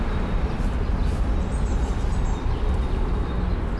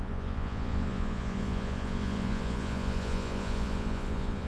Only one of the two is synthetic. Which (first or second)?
second